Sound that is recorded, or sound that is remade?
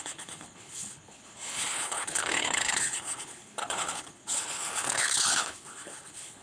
remade